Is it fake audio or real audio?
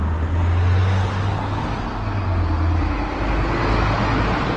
real